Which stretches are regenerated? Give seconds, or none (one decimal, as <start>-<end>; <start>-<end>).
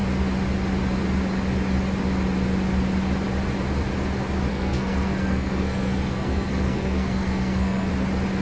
4.5-7.9